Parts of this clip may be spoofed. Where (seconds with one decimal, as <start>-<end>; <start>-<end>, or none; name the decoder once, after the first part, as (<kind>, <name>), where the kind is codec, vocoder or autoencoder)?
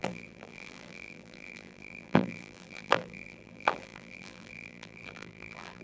0.0-5.8 (vocoder, BigVGAN v2)